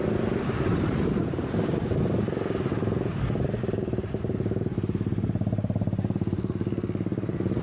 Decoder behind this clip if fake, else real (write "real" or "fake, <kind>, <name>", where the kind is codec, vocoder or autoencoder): real